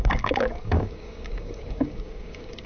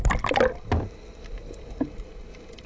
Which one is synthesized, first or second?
first